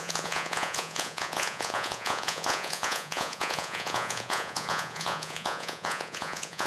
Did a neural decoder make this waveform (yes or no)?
yes